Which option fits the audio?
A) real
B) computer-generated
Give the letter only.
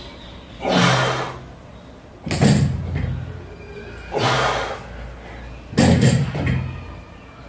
A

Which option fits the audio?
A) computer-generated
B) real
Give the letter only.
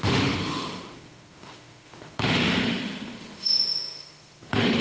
A